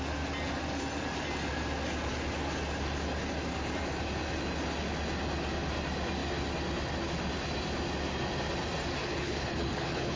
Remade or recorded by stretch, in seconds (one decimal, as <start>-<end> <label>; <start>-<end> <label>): 0.0-9.0 recorded; 9.0-10.2 remade